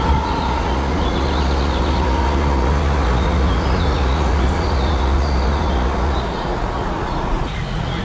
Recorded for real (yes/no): no